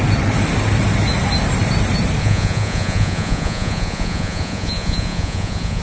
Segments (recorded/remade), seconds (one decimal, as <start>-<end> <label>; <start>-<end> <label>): 0.0-2.2 recorded; 2.2-5.8 remade